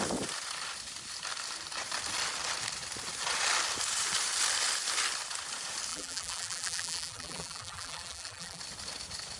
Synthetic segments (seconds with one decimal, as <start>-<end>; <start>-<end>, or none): 5.9-8.6